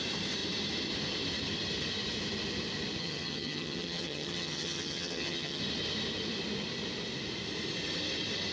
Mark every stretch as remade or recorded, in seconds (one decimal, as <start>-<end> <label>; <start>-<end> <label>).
0.0-3.0 recorded; 3.0-5.6 remade; 5.6-8.5 recorded